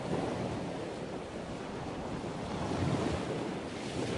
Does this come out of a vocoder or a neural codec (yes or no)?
no